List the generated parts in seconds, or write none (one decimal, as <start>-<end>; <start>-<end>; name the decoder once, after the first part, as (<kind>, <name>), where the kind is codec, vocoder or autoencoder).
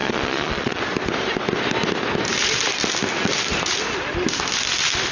0.0-0.8 (vocoder, Vocos)